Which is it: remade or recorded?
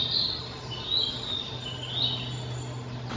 recorded